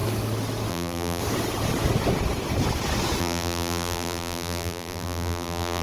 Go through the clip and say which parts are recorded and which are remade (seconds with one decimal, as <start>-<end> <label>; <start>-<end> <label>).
0.0-0.7 recorded; 0.7-1.2 remade; 1.2-3.2 recorded; 3.2-5.8 remade